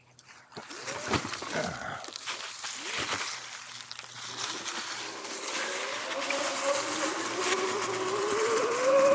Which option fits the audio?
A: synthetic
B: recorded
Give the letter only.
B